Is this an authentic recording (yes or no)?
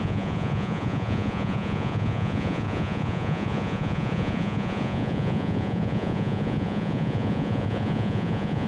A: no